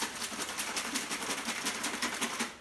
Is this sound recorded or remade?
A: recorded